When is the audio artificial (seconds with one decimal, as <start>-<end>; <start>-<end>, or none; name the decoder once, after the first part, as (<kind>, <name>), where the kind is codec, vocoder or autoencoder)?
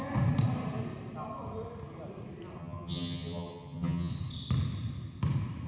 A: 2.6-4.1 (vocoder, HiFi-GAN)